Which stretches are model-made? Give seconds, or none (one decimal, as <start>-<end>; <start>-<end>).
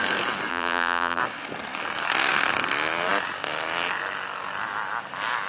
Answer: 0.5-1.2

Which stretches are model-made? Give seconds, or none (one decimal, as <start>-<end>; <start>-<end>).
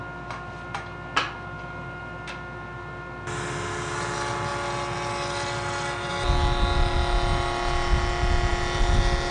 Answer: none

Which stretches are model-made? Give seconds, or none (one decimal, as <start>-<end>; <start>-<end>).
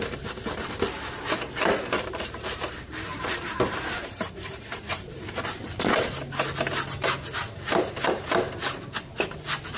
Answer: 1.6-5.4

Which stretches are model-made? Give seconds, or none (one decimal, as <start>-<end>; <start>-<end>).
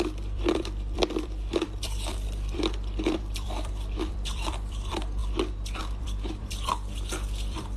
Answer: 0.0-7.8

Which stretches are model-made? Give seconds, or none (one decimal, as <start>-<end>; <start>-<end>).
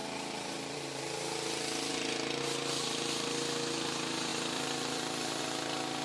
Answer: 0.0-1.0; 4.3-5.4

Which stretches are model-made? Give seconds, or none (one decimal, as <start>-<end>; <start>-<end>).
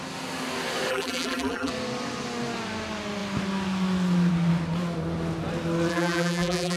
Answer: 0.9-1.7; 5.9-6.8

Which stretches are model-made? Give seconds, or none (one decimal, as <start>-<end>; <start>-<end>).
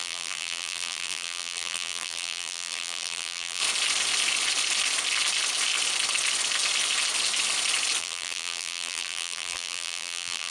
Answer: 0.0-3.6; 8.0-10.5